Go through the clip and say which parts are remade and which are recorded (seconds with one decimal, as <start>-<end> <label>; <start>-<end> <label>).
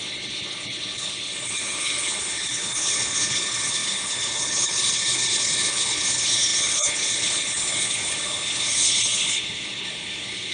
0.0-10.5 remade